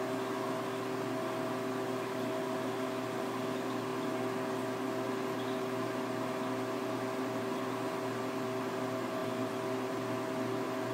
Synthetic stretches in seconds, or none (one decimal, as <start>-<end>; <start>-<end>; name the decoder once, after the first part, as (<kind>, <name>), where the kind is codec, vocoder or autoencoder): 9.2-9.9 (vocoder, BigVGAN v2)